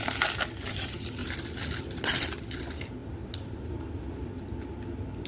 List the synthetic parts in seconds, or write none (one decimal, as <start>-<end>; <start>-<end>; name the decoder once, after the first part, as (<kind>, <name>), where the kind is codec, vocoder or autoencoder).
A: 0.0-5.3 (vocoder, BigVGAN v2)